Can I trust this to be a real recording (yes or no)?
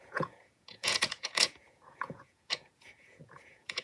no